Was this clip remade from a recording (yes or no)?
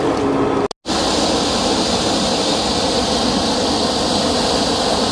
no